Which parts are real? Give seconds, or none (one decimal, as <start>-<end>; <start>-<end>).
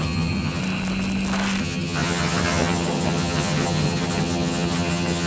0.6-1.6